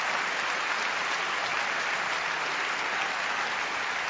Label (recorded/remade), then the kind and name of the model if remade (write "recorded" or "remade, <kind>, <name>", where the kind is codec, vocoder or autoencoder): recorded